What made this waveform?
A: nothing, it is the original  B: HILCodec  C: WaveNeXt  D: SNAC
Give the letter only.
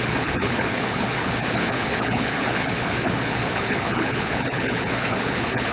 B